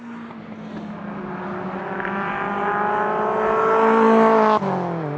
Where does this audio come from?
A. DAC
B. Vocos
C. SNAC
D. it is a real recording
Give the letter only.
D